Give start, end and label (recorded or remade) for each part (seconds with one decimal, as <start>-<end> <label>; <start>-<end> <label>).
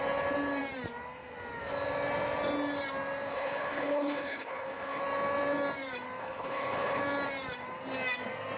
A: 0.0-3.3 recorded; 3.3-5.0 remade; 5.0-6.2 recorded; 6.2-7.0 remade; 7.0-8.6 recorded